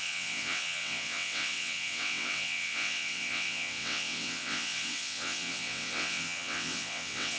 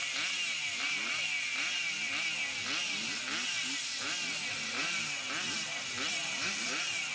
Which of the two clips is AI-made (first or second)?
first